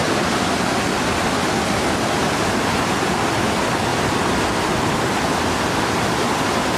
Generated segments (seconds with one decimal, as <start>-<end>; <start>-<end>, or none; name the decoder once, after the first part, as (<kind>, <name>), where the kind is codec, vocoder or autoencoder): none